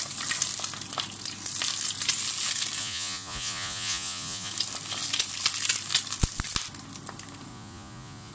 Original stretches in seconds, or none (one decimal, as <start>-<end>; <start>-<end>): 0.0-2.8; 4.5-7.5